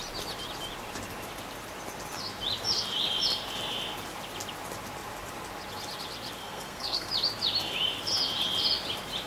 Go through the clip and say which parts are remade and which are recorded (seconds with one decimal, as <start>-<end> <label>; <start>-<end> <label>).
0.0-6.4 recorded; 6.4-7.1 remade; 7.1-9.3 recorded